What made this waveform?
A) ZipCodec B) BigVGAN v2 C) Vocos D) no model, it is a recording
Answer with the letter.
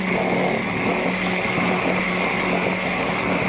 D